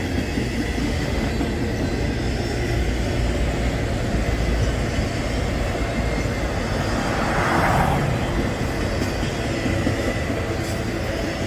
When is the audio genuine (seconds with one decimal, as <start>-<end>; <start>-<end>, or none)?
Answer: 0.0-0.8; 1.3-11.5